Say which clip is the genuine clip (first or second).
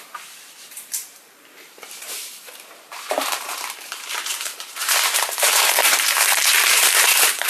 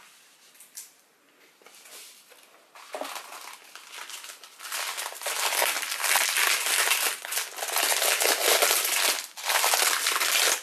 second